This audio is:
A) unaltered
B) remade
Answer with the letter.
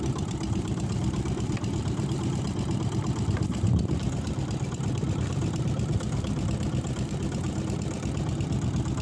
B